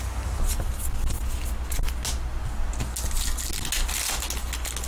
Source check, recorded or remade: recorded